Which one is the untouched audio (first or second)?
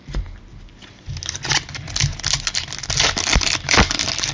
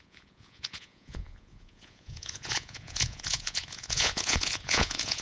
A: first